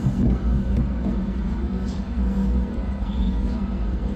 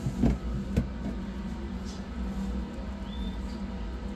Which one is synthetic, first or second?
first